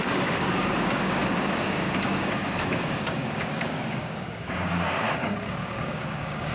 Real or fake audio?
fake